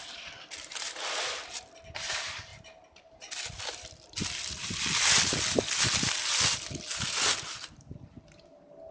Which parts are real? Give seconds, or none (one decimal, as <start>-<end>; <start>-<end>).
0.0-8.9